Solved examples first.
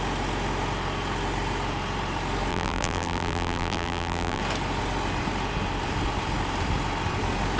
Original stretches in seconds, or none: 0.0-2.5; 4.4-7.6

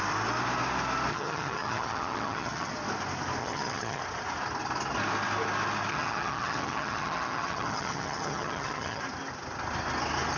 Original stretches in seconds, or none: 0.0-1.1; 2.7-3.4; 4.0-5.9; 9.0-10.4

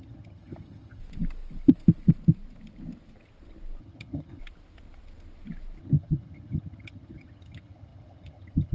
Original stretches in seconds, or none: 1.0-3.8; 4.4-5.8

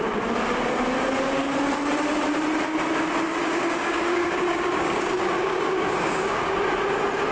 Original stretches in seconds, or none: 0.0-3.4; 6.6-7.3

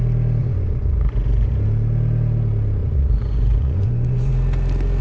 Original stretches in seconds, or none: 0.0-0.4; 1.5-2.8; 4.3-5.0

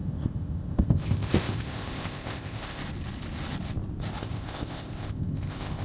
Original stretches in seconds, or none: 2.8-4.2